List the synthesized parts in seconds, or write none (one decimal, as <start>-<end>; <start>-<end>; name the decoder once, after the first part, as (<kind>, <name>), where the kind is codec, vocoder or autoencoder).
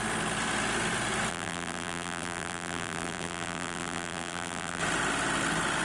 1.3-4.8 (vocoder, BigVGAN v2)